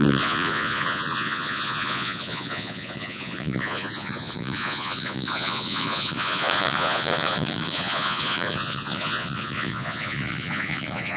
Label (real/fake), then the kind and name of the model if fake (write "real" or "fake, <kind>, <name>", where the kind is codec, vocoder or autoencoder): fake, vocoder, Vocos